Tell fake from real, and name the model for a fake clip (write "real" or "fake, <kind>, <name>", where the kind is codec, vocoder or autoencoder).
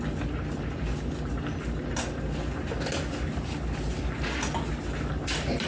real